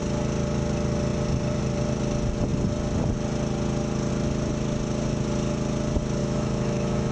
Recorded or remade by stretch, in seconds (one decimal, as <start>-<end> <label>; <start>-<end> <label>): 0.0-6.2 recorded; 6.2-7.1 remade

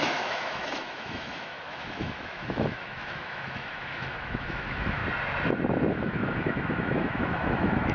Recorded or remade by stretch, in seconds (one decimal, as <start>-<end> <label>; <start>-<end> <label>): 0.0-5.0 remade; 5.0-5.9 recorded; 5.9-7.9 remade

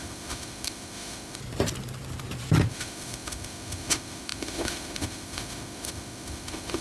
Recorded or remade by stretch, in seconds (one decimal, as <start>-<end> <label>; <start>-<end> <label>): 0.0-1.4 remade; 1.4-2.7 recorded; 2.7-6.8 remade

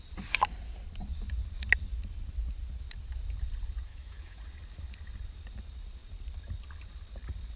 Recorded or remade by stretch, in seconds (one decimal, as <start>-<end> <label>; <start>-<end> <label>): 0.0-3.9 recorded; 3.9-4.4 remade; 4.4-7.6 recorded

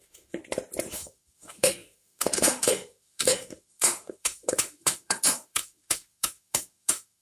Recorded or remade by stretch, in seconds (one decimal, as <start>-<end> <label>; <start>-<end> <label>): 0.0-0.4 remade; 0.4-0.9 recorded; 0.9-7.2 remade

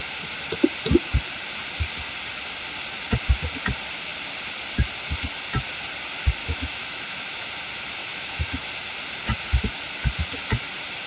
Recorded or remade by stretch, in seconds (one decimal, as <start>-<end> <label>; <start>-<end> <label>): 0.0-6.4 recorded; 6.4-7.5 remade; 7.5-8.0 recorded; 8.0-8.7 remade; 8.7-11.1 recorded